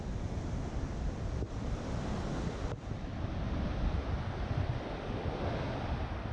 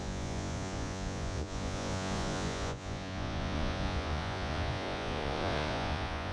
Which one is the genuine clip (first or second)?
first